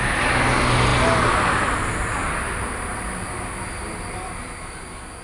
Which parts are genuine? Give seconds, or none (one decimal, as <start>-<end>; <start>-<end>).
0.0-5.2